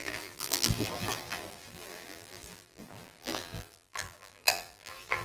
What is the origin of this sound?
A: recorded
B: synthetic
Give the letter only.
B